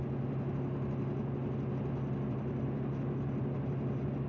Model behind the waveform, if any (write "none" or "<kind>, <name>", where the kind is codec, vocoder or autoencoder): none